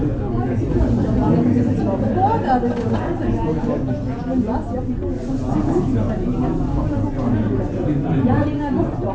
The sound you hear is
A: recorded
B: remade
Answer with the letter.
A